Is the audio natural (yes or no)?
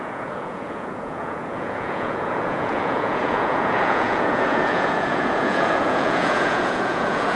no